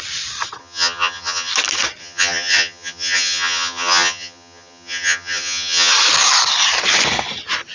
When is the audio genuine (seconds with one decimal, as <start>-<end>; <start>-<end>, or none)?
0.0-0.6; 1.5-2.0; 5.9-7.7